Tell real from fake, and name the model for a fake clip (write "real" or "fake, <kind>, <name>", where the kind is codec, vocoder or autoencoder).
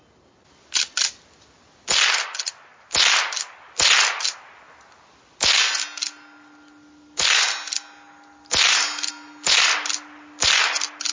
real